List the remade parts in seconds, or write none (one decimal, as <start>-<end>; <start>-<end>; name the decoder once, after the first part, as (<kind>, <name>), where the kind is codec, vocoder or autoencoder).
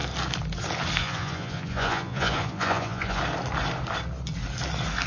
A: 1.0-3.2 (vocoder, Vocos)